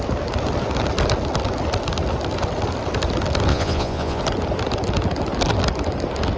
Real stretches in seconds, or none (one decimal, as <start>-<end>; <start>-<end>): 0.0-3.5; 4.2-6.4